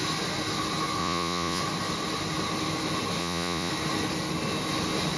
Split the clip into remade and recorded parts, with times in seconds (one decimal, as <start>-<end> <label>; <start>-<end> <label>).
0.0-1.0 recorded; 1.0-1.6 remade; 1.6-3.2 recorded; 3.2-3.7 remade; 3.7-5.2 recorded